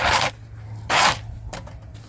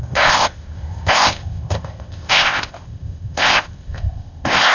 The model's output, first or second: second